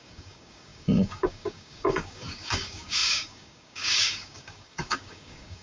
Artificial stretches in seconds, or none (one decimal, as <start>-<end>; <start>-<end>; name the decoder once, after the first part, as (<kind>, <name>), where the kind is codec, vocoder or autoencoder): 0.0-5.6 (codec, DAC)